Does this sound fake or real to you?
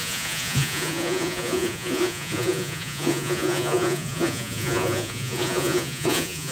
fake